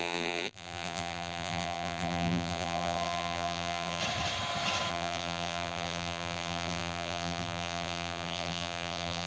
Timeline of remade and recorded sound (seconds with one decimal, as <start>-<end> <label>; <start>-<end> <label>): 0.0-4.0 remade; 4.0-4.9 recorded; 4.9-9.3 remade

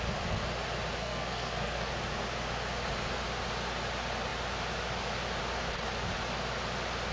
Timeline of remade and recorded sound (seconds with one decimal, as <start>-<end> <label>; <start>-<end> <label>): 0.0-1.0 recorded; 1.0-1.9 remade; 1.9-7.1 recorded

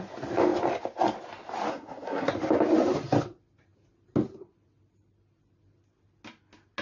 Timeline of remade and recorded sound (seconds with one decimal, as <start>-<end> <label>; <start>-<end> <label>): 0.0-1.7 recorded; 1.7-2.3 remade; 2.3-6.8 recorded

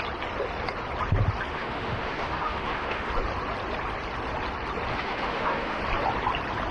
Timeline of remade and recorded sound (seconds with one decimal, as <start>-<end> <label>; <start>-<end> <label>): 0.0-1.5 recorded; 1.5-3.1 remade; 3.1-4.9 recorded; 4.9-5.8 remade; 5.8-6.7 recorded

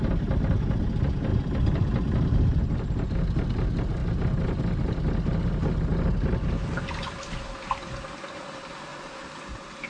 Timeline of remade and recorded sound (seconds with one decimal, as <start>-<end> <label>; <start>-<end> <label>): 0.0-9.9 recorded

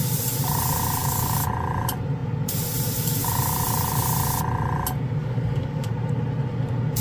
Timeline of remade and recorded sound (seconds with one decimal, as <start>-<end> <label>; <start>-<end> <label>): 0.0-1.0 recorded; 1.0-1.5 remade; 1.5-5.2 recorded; 5.2-5.9 remade; 5.9-7.0 recorded

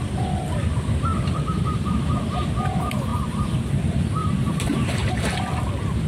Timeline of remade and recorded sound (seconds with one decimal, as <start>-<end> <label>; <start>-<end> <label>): 0.0-1.1 recorded; 1.1-2.2 remade; 2.2-3.1 recorded; 3.1-3.7 remade; 3.7-4.2 recorded; 4.2-5.2 remade; 5.2-6.1 recorded